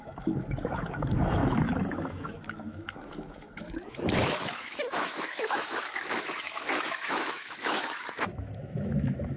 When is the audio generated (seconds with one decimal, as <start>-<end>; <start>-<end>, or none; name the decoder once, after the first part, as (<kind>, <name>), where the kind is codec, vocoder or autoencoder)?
0.0-9.4 (autoencoder, DAC-VAE)